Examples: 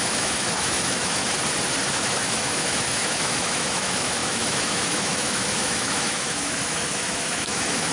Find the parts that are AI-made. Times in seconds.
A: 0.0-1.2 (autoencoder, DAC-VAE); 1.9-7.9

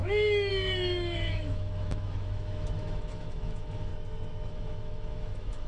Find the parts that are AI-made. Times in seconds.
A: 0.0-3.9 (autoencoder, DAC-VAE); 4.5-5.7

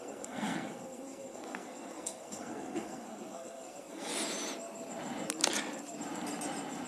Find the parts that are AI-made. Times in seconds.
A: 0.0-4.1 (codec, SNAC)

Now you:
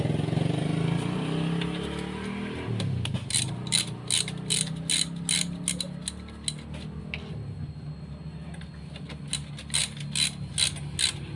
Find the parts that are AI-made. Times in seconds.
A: none